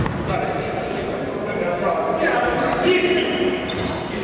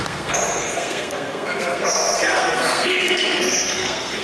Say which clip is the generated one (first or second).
second